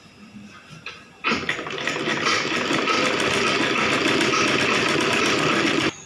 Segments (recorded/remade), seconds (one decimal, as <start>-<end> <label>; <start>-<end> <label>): 0.0-6.1 recorded